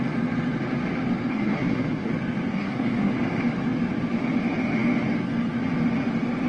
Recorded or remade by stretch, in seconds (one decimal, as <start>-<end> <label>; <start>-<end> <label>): 0.0-1.3 recorded; 1.3-2.1 remade; 2.1-2.5 recorded; 2.5-3.1 remade; 3.1-6.5 recorded